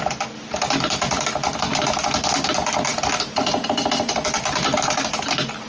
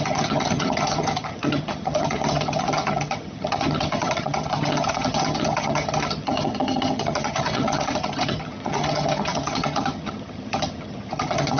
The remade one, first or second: second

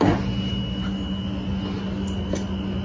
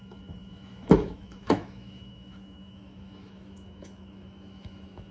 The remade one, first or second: second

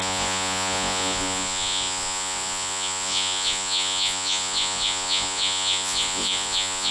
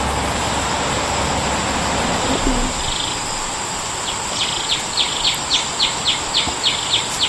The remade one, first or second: first